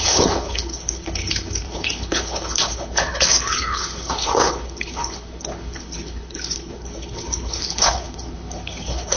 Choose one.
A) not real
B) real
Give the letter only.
A